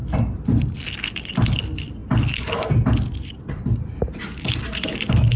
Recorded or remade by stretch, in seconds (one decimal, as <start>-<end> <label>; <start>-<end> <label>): 0.0-5.4 recorded